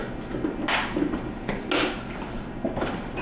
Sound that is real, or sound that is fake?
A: real